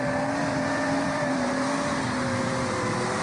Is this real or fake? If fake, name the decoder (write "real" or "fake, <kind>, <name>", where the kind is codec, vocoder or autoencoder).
fake, vocoder, BigVGAN v2